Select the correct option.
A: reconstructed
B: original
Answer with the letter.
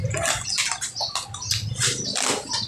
B